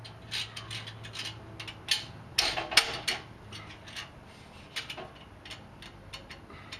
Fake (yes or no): no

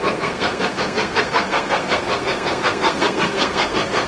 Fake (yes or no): yes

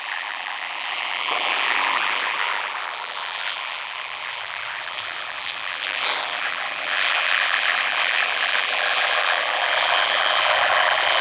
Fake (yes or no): yes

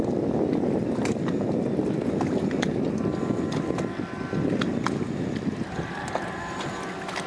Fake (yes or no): no